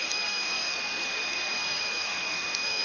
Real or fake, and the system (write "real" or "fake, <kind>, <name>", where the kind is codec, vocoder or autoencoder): fake, codec, SNAC